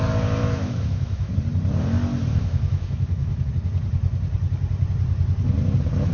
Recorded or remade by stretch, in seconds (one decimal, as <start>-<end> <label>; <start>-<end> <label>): 0.0-0.4 recorded; 0.4-1.3 remade; 1.3-2.3 recorded; 2.3-3.5 remade; 3.5-6.1 recorded